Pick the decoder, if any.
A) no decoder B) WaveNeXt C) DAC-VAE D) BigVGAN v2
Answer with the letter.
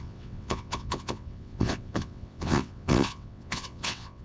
B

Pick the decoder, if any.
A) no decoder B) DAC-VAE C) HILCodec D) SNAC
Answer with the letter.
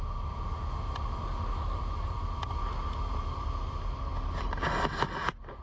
A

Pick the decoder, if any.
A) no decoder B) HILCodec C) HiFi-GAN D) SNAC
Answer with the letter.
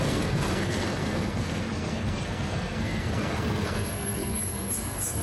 D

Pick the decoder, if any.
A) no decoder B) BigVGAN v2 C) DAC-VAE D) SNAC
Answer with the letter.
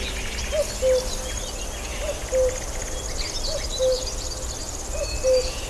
A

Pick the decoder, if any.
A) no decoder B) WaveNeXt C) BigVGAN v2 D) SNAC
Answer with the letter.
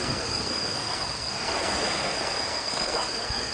D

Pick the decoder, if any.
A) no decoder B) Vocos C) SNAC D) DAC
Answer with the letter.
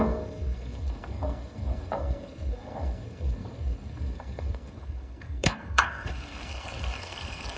C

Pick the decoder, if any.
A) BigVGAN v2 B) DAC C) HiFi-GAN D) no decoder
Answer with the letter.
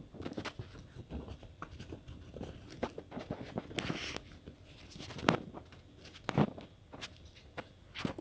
D